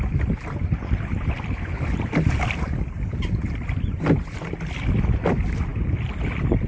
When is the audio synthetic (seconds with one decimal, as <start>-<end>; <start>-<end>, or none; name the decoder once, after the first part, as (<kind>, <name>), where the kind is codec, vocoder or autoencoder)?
none